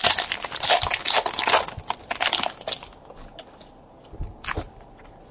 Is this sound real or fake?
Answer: real